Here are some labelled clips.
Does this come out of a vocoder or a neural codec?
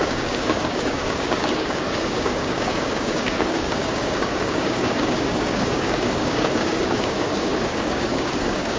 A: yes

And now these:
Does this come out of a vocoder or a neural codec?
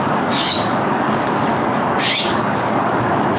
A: yes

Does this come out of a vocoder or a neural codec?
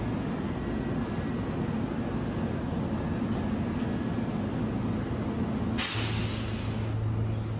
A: no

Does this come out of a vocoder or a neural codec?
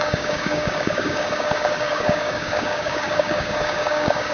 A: yes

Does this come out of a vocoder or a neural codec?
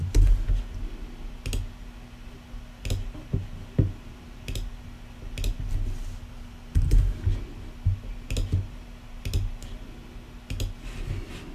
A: no